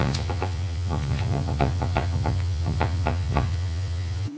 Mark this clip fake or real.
fake